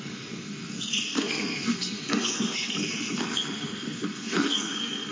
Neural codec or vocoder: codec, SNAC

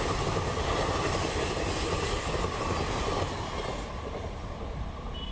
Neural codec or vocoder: none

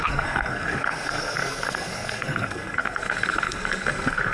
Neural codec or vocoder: codec, SNAC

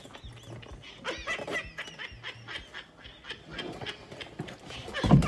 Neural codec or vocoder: none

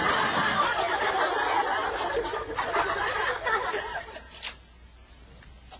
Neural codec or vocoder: none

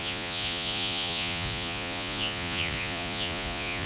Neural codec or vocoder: vocoder, Vocos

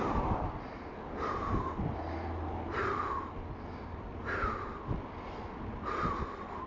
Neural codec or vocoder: none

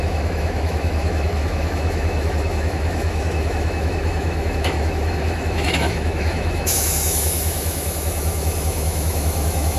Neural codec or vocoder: autoencoder, DAC-VAE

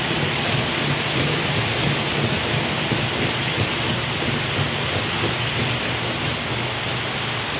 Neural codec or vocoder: none